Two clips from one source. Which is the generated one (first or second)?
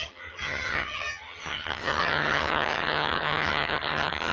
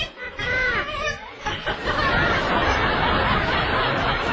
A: first